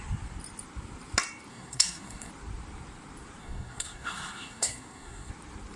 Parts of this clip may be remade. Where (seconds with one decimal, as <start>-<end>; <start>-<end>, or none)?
1.5-2.3; 3.4-5.3